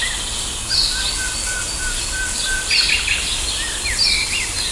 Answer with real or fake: real